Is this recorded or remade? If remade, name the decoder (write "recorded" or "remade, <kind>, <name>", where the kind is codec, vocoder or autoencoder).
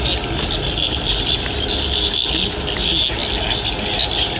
recorded